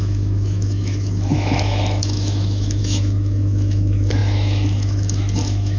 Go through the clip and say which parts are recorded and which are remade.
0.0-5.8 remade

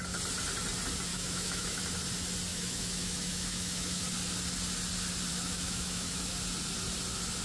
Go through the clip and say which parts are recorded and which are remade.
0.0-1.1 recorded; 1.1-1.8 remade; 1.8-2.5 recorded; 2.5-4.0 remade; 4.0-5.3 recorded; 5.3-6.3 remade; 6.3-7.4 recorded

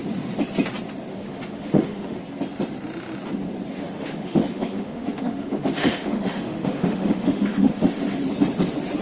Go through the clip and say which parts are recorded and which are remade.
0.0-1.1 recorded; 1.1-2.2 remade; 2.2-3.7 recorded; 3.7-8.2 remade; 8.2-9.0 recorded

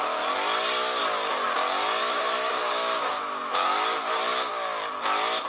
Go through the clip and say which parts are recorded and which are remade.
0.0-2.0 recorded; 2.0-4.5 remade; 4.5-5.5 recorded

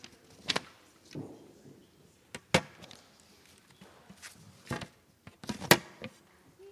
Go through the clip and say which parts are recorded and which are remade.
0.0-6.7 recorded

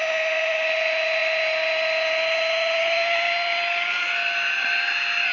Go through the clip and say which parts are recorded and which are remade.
0.0-5.3 recorded